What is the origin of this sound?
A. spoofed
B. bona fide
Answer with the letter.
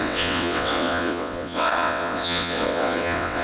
A